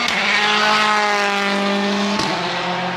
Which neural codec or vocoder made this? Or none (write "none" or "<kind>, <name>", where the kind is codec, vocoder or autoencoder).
none